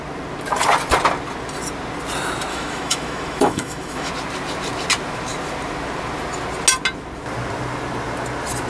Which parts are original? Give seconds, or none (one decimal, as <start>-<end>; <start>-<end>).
0.0-2.5; 4.1-8.7